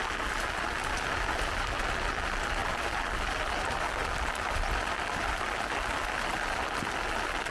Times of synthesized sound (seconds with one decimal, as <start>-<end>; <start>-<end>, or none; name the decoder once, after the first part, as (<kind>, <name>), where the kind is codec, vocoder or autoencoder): none